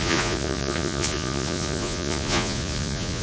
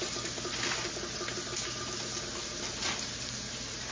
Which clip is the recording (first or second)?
second